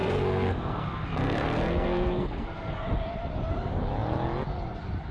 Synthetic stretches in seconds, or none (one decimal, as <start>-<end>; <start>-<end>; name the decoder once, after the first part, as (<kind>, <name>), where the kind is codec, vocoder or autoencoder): 0.0-2.8 (codec, SNAC)